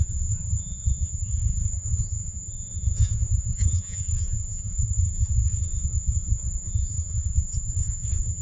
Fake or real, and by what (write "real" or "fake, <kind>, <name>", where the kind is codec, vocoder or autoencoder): fake, vocoder, Vocos